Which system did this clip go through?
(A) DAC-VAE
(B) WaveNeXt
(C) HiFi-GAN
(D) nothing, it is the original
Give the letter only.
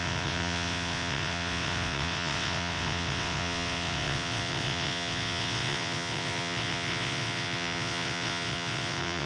B